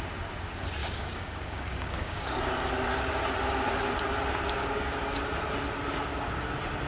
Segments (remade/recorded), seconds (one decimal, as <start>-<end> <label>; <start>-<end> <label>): 0.0-0.8 recorded; 0.8-2.7 remade; 2.7-4.6 recorded; 4.6-5.2 remade; 5.2-6.9 recorded